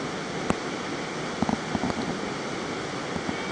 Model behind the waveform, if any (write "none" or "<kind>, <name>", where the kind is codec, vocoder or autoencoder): none